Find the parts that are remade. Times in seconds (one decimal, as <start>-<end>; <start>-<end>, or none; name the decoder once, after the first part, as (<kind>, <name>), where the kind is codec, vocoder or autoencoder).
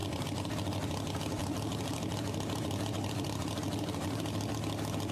0.0-0.5 (vocoder, BigVGAN v2); 1.4-4.5